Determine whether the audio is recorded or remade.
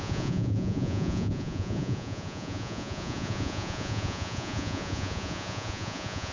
remade